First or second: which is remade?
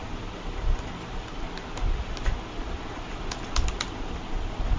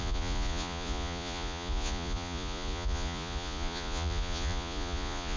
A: second